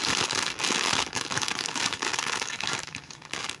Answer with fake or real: fake